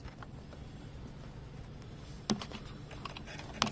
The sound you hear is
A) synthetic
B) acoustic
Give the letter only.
B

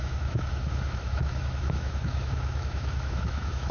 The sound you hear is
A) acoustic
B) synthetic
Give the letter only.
B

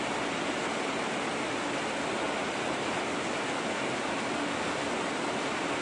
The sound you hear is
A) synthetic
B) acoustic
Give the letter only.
B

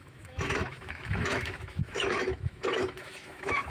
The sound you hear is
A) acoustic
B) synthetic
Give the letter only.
B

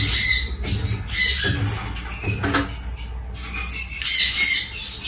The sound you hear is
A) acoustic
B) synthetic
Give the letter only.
A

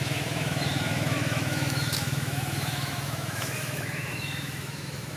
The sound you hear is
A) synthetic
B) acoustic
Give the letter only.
A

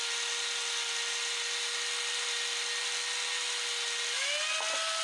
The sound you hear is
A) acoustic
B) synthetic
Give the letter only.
A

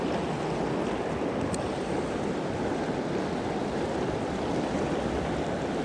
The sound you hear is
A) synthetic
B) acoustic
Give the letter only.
B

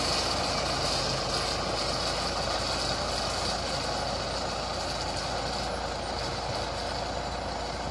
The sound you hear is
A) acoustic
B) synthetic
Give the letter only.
A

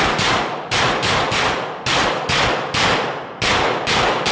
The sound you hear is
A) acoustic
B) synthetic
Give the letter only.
A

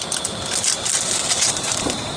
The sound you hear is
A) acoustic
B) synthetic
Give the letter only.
A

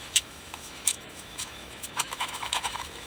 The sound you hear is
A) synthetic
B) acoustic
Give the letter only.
A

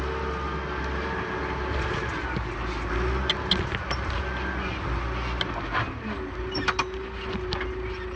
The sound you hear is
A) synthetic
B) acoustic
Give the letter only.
B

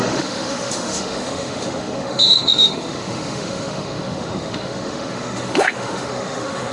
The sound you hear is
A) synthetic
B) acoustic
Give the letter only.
A